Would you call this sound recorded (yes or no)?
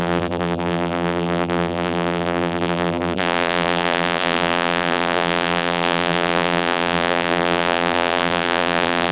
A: no